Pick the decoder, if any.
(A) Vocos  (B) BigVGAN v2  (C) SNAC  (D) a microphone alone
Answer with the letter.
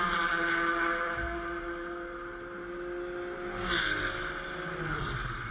D